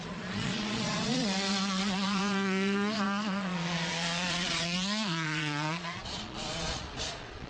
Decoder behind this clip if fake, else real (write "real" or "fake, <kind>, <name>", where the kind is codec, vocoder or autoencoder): fake, vocoder, Vocos